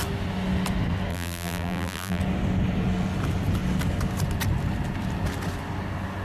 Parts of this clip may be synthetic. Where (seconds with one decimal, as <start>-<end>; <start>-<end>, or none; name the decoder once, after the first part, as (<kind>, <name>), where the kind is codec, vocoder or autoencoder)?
1.1-2.2 (vocoder, BigVGAN v2)